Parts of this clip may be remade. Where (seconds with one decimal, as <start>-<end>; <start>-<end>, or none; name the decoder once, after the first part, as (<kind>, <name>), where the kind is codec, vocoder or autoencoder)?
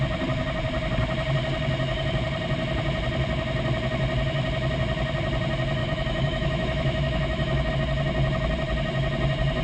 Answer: 5.8-7.7 (autoencoder, DAC-VAE)